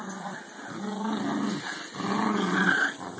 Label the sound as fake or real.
real